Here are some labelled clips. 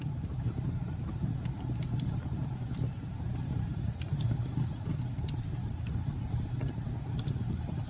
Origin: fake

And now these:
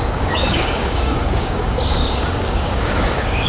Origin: fake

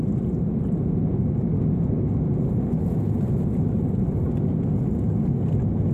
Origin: real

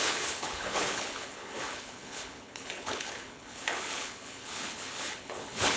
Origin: fake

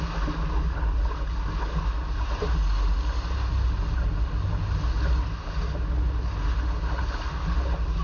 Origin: real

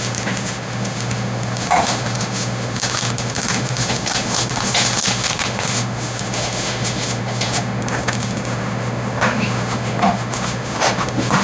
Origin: fake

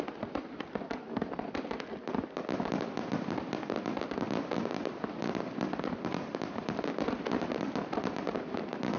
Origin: fake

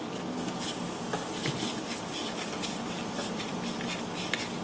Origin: real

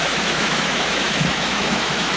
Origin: fake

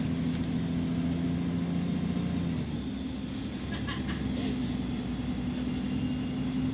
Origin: real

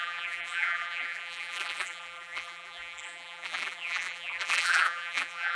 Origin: fake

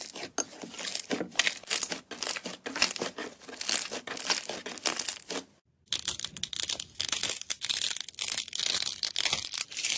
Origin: real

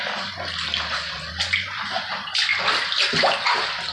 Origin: real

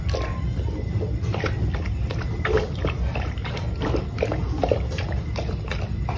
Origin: real